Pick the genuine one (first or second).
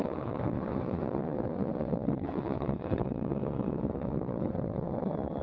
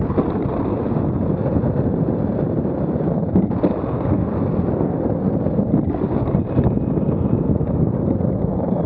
second